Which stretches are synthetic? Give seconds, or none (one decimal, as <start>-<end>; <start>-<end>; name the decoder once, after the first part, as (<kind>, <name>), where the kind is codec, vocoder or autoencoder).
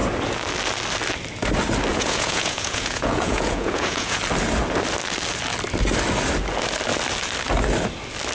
1.9-4.2 (vocoder, Vocos)